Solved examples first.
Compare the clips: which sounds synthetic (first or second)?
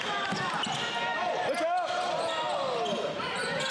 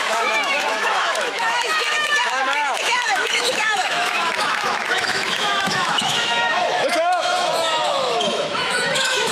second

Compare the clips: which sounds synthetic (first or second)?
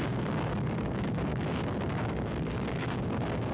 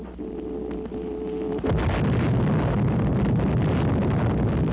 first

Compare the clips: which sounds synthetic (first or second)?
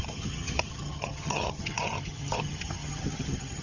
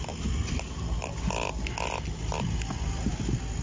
first